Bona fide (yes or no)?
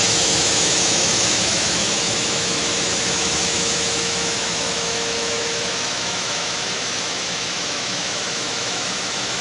no